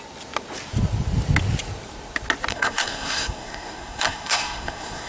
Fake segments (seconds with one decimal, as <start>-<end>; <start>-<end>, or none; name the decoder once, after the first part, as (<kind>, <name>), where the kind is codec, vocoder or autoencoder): 2.5-5.1 (codec, SNAC)